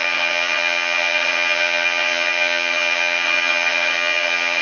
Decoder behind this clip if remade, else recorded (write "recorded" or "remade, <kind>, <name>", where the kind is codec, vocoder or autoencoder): remade, vocoder, HiFi-GAN